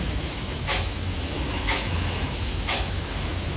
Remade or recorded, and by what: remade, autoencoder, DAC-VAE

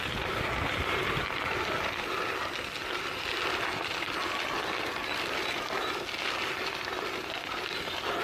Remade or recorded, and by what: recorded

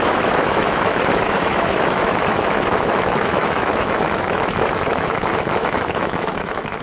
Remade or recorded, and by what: remade, autoencoder, DAC-VAE